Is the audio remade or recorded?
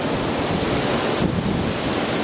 recorded